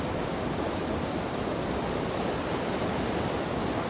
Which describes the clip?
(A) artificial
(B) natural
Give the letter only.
B